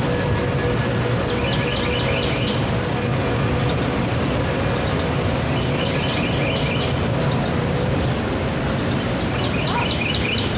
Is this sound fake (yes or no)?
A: no